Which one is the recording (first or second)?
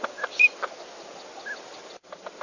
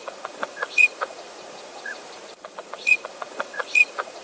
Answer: first